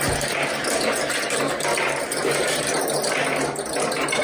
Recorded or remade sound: recorded